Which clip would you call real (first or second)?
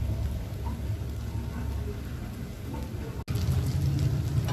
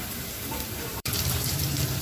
first